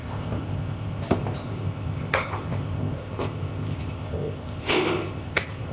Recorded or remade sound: remade